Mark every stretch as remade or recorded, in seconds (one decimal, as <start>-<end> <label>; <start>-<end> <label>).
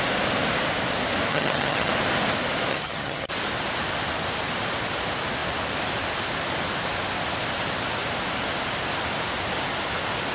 0.0-1.3 recorded; 1.3-1.9 remade; 1.9-2.7 recorded; 2.7-3.3 remade; 3.3-10.3 recorded